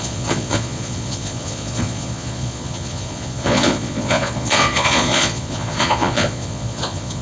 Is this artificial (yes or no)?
yes